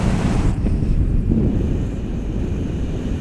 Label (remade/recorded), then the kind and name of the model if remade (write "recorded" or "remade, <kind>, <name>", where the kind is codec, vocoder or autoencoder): remade, vocoder, BigVGAN v2